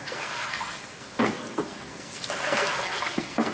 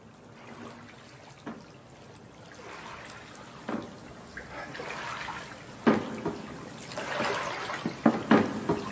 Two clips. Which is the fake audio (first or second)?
first